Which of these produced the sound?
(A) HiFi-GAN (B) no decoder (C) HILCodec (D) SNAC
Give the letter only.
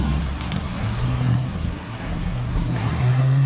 D